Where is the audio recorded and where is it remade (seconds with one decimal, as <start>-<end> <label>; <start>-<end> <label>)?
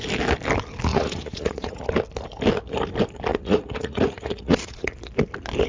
0.0-0.9 recorded; 0.9-1.9 remade; 1.9-3.3 recorded; 3.3-4.9 remade; 4.9-5.7 recorded